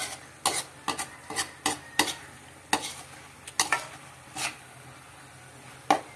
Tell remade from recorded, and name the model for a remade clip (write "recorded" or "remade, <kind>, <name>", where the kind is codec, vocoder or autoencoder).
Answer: recorded